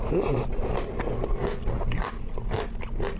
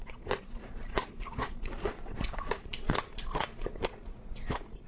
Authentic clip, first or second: first